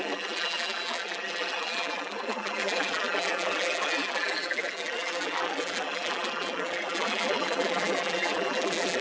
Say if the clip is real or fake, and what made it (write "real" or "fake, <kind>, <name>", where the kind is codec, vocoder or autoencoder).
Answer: fake, vocoder, BigVGAN v2